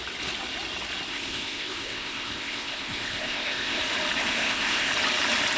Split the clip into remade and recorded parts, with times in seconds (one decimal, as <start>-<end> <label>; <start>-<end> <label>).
0.0-1.1 recorded; 1.1-3.8 remade; 3.8-4.2 recorded; 4.2-4.9 remade; 4.9-5.6 recorded